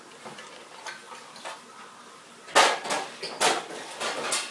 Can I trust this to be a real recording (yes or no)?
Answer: yes